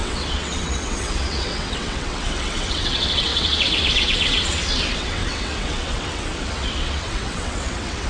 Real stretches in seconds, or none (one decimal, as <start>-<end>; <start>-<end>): none